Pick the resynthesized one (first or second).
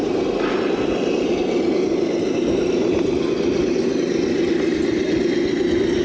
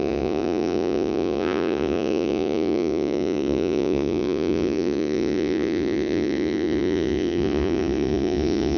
second